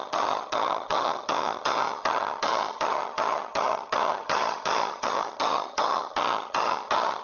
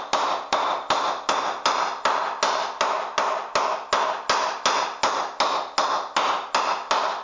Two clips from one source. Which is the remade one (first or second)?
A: first